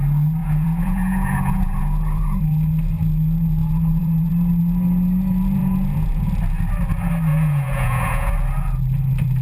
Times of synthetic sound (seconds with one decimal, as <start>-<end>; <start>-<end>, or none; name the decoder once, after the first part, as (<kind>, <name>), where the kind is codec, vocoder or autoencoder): 0.4-2.4 (vocoder, Vocos); 3.6-4.3; 5.6-6.2; 7.3-8.3